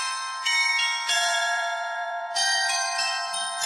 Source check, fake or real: fake